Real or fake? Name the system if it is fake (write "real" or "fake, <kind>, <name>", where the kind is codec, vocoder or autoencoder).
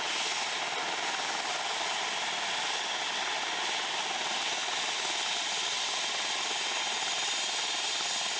real